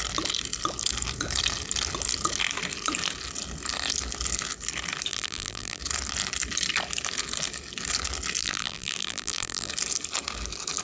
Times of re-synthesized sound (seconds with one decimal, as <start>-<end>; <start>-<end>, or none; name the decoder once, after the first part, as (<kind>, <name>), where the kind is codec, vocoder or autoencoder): 5.1-5.8 (vocoder, BigVGAN v2); 8.4-9.7